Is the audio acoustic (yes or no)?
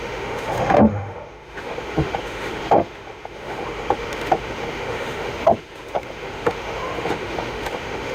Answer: no